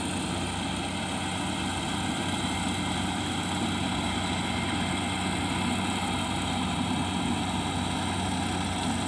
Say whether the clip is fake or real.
real